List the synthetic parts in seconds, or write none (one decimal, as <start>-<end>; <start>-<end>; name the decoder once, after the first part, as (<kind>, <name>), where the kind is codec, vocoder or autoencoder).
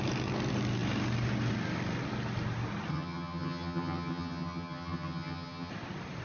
2.9-5.7 (vocoder, HiFi-GAN)